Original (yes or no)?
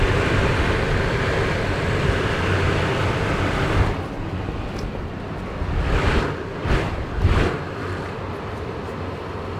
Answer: yes